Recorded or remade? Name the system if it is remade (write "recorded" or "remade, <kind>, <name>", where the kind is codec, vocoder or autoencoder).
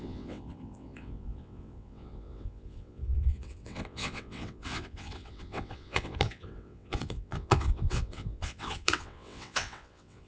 remade, vocoder, WaveNeXt